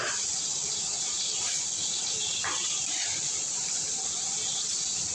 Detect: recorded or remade recorded